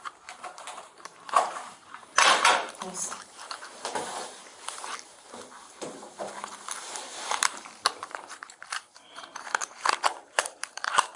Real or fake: fake